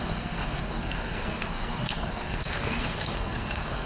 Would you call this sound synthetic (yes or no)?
yes